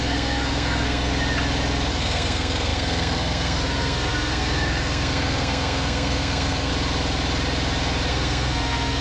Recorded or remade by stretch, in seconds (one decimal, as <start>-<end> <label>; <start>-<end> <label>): 0.0-1.1 remade; 1.1-1.9 recorded; 1.9-6.7 remade; 6.7-8.1 recorded; 8.1-9.0 remade